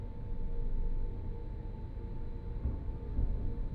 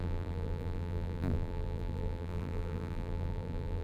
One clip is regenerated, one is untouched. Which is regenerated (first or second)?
second